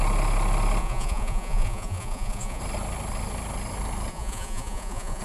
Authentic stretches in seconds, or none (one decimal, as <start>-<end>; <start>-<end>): 0.0-0.8; 2.6-4.1